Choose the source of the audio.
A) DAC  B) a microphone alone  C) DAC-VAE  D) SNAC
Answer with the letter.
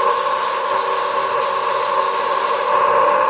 B